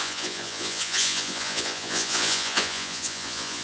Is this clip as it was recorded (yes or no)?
no